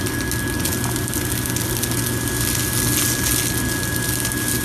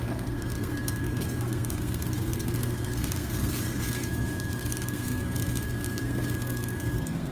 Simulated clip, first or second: second